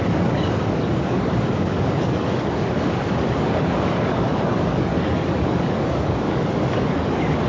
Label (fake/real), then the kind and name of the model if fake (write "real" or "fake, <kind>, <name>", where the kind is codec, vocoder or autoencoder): fake, codec, DAC